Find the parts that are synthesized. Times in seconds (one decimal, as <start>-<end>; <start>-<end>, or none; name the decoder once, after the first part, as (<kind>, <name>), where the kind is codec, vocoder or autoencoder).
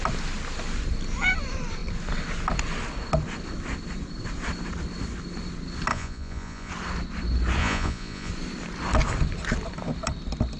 5.9-6.7 (vocoder, Vocos); 7.6-8.3